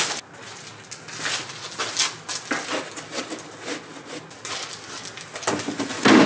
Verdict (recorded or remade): recorded